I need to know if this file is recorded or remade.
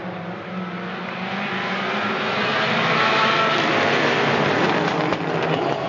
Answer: remade